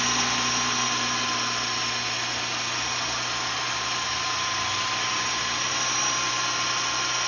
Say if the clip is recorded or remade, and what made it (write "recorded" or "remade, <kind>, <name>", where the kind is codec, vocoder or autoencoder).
recorded